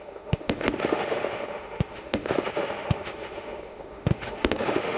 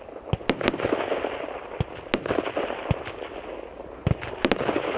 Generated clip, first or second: first